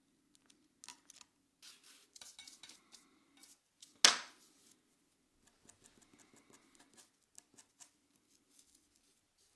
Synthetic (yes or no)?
no